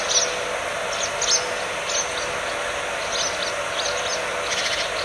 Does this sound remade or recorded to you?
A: recorded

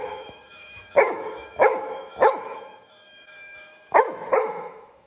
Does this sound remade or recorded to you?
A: remade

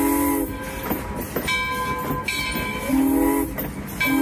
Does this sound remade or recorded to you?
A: recorded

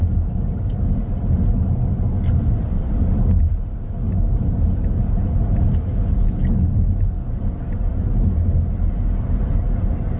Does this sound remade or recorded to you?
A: recorded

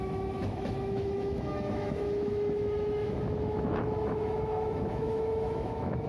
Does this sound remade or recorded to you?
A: remade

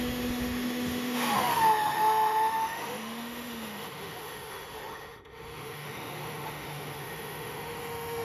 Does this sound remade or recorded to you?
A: remade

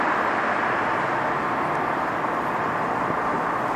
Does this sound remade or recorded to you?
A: recorded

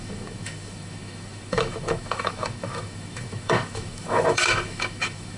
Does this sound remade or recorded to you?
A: remade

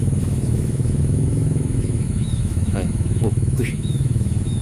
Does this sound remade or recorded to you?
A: remade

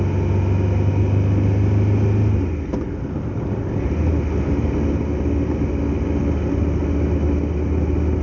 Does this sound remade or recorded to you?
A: recorded